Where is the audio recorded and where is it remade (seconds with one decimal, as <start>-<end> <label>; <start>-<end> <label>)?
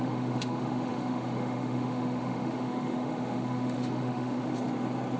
0.0-4.5 remade; 4.5-5.2 recorded